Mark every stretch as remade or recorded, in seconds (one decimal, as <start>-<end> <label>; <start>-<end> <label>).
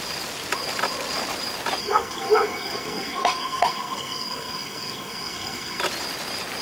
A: 0.0-1.8 recorded; 1.8-5.8 remade; 5.8-6.6 recorded